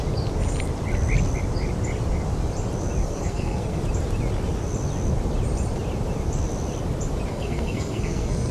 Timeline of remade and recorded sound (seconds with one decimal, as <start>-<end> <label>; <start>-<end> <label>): 0.0-3.0 recorded; 3.0-3.8 remade; 3.8-7.3 recorded; 7.3-8.5 remade